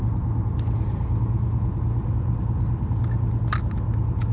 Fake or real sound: real